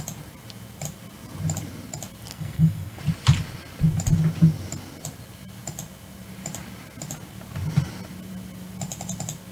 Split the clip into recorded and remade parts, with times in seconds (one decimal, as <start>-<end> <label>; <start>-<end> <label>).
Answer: 0.0-2.3 recorded; 2.3-3.0 remade; 3.0-9.5 recorded